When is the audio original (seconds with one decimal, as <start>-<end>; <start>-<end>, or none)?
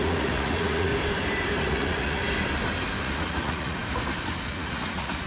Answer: 0.9-1.6; 2.2-3.0; 3.8-4.5